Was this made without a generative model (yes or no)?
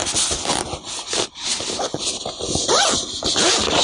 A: yes